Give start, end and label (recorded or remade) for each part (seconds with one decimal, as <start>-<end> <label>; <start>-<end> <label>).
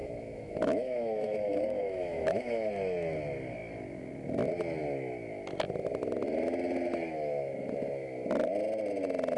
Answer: 0.0-2.7 remade; 2.7-9.4 recorded